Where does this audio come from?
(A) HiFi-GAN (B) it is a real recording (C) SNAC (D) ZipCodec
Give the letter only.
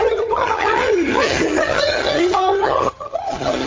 A